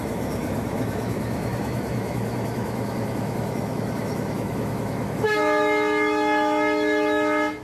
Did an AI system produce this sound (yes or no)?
yes